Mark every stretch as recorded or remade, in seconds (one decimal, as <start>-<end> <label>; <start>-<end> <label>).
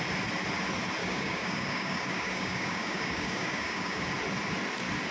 0.0-1.0 recorded; 1.0-4.1 remade; 4.1-5.1 recorded